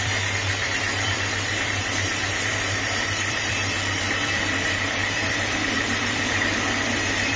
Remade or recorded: remade